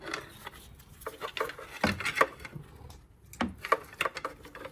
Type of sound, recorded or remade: recorded